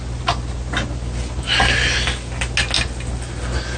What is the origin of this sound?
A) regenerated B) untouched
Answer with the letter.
B